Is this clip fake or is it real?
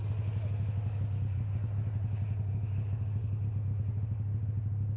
real